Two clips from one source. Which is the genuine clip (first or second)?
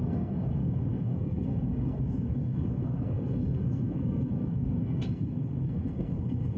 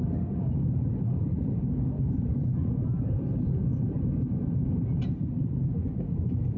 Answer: second